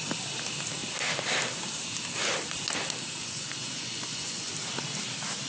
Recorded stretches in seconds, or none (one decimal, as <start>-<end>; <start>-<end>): 0.0-3.2; 4.5-5.5